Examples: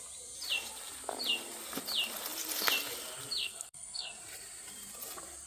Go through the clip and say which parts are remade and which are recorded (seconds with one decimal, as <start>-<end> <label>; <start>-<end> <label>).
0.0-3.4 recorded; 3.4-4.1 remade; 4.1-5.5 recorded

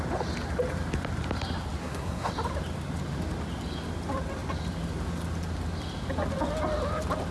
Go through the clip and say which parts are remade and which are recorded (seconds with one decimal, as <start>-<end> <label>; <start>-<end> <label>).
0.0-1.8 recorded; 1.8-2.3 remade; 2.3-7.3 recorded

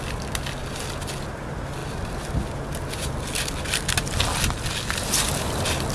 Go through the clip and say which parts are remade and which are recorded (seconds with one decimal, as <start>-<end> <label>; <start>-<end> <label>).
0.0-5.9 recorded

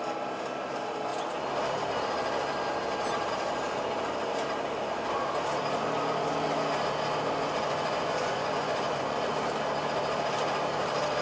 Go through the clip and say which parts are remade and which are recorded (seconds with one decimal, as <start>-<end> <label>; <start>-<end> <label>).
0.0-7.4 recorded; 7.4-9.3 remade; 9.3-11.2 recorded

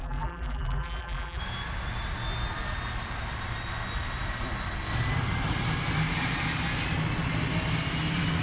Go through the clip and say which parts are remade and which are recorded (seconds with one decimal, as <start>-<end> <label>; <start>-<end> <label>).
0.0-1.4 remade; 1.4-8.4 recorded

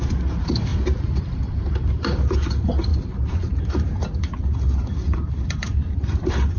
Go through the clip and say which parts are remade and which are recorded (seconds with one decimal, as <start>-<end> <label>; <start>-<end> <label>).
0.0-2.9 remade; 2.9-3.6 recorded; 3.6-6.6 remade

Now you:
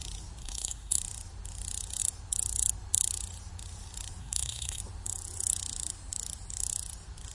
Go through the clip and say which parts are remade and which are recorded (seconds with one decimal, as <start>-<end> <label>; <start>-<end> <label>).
0.0-0.4 recorded; 0.4-1.0 remade; 1.0-4.2 recorded; 4.2-4.8 remade; 4.8-7.3 recorded

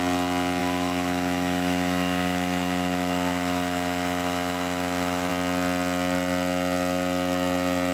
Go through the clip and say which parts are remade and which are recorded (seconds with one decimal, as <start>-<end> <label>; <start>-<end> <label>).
0.0-0.6 recorded; 0.6-5.3 remade; 5.3-7.9 recorded